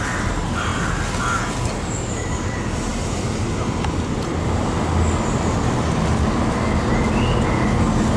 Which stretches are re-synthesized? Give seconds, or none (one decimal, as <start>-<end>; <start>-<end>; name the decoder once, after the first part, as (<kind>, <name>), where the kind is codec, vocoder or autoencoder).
none